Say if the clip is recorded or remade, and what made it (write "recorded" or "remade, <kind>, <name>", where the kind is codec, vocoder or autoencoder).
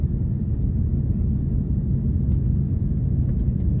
recorded